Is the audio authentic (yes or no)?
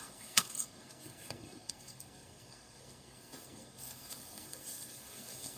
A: no